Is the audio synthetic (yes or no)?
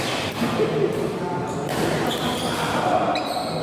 no